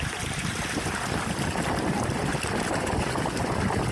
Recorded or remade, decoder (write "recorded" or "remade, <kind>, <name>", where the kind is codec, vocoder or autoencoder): recorded